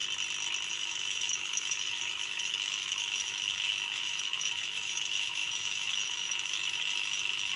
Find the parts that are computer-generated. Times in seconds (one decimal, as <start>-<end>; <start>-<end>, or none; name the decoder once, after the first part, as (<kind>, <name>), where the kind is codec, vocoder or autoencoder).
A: 0.7-7.6 (autoencoder, DAC-VAE)